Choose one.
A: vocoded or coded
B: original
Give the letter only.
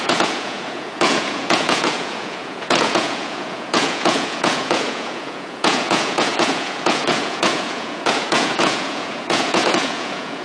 A